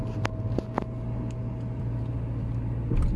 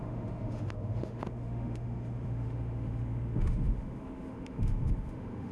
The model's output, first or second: second